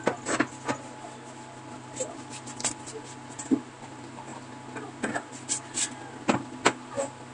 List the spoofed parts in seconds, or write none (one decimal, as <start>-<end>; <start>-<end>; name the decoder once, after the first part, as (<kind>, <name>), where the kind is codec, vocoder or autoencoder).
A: none